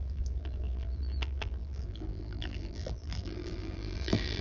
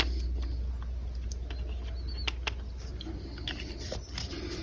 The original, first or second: second